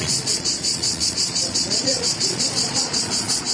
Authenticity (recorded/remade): remade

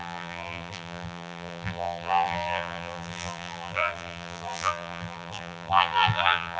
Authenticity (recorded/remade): remade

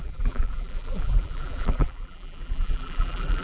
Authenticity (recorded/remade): remade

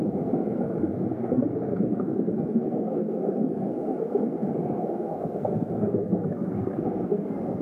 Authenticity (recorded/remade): remade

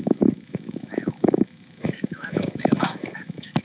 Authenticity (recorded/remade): remade